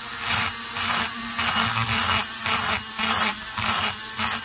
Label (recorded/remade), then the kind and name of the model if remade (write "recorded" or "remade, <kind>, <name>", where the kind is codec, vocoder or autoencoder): recorded